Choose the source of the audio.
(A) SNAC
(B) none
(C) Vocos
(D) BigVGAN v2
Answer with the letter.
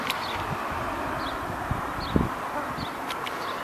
B